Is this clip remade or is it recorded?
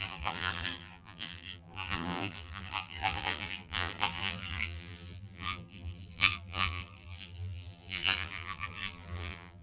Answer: remade